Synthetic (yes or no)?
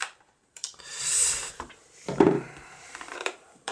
yes